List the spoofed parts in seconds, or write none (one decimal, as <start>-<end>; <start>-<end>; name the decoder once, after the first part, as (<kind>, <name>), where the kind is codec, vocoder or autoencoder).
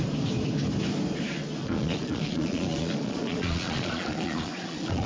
1.6-5.1 (vocoder, Vocos)